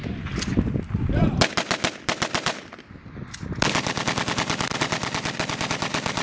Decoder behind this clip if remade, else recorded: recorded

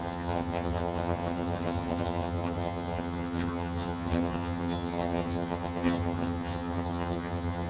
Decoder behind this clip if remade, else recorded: remade, vocoder, HiFi-GAN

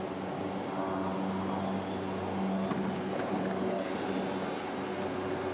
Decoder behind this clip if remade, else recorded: recorded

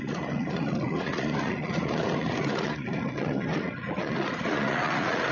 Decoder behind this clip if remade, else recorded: remade, vocoder, Vocos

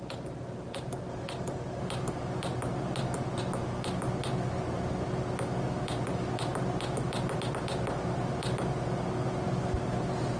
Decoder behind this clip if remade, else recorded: recorded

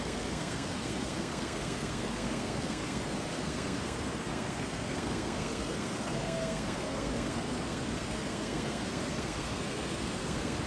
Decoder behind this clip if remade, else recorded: remade, codec, SNAC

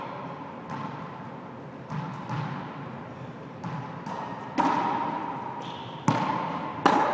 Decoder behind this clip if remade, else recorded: recorded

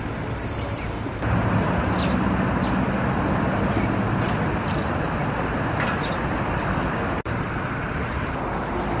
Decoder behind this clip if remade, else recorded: recorded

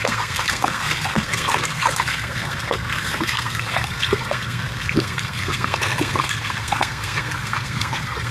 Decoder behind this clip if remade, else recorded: remade, codec, SNAC